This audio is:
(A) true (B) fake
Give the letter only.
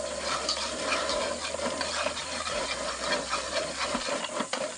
A